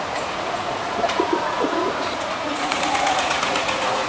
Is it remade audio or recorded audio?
remade